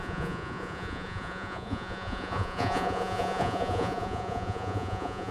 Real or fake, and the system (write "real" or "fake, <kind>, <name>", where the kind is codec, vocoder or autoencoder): fake, vocoder, Vocos